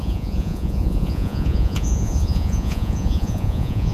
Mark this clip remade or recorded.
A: remade